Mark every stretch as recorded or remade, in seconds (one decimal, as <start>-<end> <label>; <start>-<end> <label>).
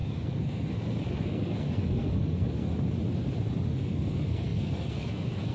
0.0-2.7 remade; 2.7-3.7 recorded; 3.7-5.5 remade